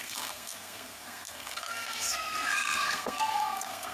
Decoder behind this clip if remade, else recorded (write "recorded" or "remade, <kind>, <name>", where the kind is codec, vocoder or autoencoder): remade, codec, SNAC